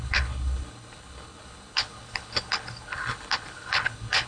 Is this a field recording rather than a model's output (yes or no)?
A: no